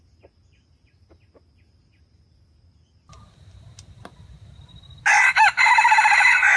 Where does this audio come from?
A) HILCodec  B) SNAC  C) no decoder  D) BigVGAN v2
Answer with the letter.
C